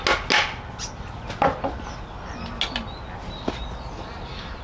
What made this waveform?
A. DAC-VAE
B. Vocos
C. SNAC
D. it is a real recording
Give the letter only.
D